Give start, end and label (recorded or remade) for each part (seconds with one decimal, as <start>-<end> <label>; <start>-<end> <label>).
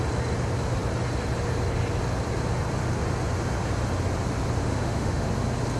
0.0-4.6 recorded; 4.6-5.3 remade; 5.3-5.8 recorded